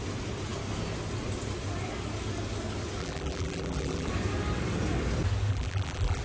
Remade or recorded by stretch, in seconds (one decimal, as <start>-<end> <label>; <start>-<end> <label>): 0.0-3.0 recorded; 3.0-4.1 remade; 4.1-5.5 recorded; 5.5-6.2 remade